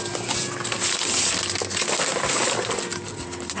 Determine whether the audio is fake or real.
real